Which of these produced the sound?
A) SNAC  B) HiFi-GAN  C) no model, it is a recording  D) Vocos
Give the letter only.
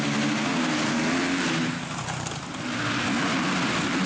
C